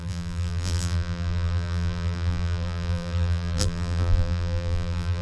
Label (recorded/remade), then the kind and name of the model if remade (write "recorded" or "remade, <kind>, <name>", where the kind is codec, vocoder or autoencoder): remade, vocoder, BigVGAN v2